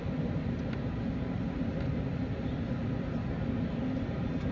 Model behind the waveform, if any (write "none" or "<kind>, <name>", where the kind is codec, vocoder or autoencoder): none